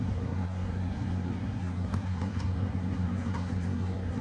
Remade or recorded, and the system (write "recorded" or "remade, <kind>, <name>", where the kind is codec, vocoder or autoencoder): remade, codec, SNAC